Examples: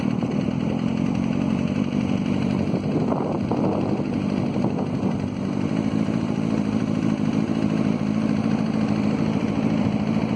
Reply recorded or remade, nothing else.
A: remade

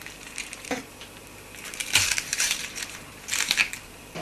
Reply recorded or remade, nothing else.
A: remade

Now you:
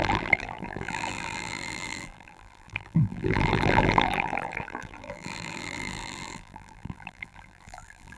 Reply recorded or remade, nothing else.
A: remade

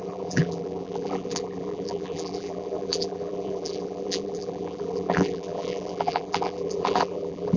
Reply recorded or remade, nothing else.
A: remade